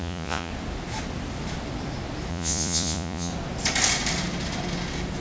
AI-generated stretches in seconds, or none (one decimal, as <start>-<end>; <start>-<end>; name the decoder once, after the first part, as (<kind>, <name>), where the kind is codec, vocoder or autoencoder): 0.0-0.5 (vocoder, Vocos); 2.3-3.3